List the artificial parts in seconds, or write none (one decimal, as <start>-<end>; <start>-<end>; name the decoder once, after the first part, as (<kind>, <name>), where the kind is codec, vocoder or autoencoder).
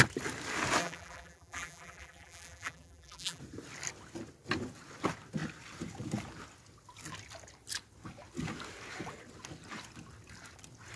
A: 0.8-3.4 (vocoder, BigVGAN v2)